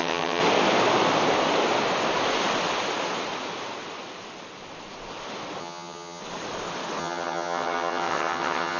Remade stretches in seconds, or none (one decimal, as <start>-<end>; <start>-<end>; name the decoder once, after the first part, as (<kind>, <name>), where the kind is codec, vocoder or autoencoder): 0.0-0.4 (vocoder, HiFi-GAN); 5.6-6.2; 7.0-8.8